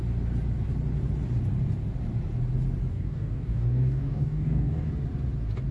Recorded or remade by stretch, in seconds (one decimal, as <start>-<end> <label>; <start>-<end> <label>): 0.0-2.9 recorded; 2.9-4.9 remade; 4.9-5.7 recorded